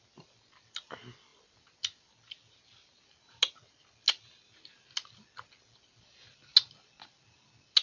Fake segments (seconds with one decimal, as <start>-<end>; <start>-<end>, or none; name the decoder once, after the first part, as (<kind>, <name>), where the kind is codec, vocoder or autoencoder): none